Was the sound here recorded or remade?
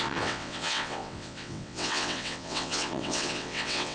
remade